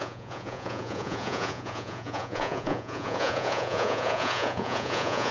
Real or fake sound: fake